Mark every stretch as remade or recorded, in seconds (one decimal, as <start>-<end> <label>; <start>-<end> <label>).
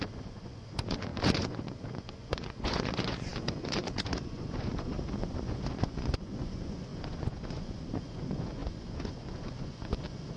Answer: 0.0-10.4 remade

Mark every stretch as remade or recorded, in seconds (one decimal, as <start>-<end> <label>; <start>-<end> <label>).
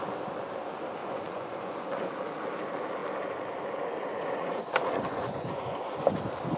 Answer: 0.0-1.0 recorded; 1.0-2.1 remade; 2.1-4.1 recorded; 4.1-6.1 remade; 6.1-6.6 recorded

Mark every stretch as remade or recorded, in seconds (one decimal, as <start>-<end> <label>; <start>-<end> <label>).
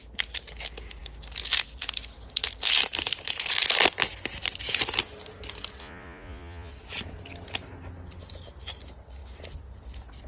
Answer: 0.0-5.8 recorded; 5.8-6.7 remade; 6.7-10.3 recorded